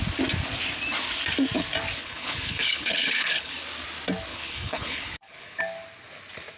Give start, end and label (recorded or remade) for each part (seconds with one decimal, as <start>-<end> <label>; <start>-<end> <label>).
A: 0.0-2.0 recorded; 2.0-3.5 remade; 3.5-4.3 recorded; 4.3-5.6 remade; 5.6-6.6 recorded